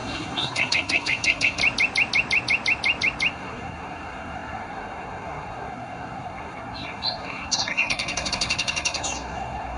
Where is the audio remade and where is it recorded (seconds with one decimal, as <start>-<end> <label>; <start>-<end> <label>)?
0.0-1.6 remade; 1.6-3.3 recorded; 3.3-9.8 remade

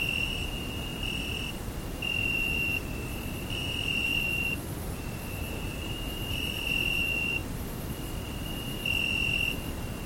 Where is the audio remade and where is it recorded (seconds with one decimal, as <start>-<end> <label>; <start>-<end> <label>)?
0.0-0.9 remade; 0.9-1.5 recorded; 1.5-7.4 remade; 7.4-9.5 recorded; 9.5-10.1 remade

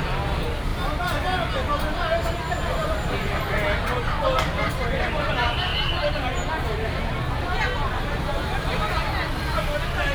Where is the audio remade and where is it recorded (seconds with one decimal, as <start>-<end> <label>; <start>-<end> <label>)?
0.0-10.1 recorded

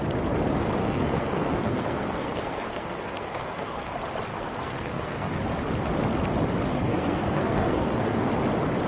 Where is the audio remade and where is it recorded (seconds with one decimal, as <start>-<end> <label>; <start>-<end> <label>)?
0.0-0.8 recorded; 0.8-3.9 remade; 3.9-4.3 recorded; 4.3-5.4 remade; 5.4-6.7 recorded; 6.7-8.3 remade; 8.3-8.9 recorded

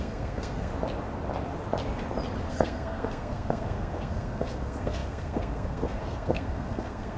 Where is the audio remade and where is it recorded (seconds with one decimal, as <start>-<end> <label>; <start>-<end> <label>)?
0.0-0.7 remade; 0.7-2.5 recorded; 2.5-7.2 remade